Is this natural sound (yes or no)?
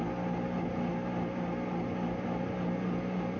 yes